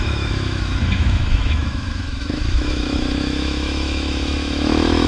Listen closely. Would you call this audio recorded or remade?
remade